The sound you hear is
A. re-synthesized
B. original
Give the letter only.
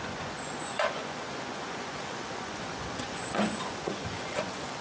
A